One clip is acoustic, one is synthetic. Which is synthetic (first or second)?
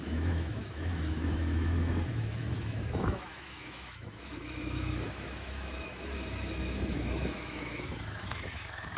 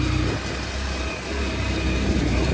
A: first